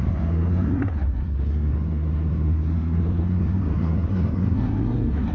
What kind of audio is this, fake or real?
fake